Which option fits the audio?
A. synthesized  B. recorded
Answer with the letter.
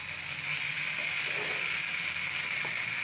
B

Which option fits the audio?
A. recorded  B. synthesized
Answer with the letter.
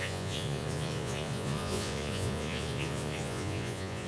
B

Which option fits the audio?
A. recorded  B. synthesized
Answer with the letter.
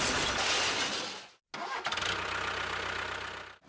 A